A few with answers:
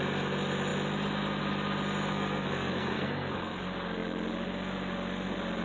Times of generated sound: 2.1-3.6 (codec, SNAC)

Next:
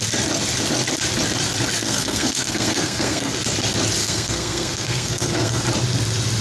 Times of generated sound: 1.8-3.3 (codec, SNAC); 4.0-5.6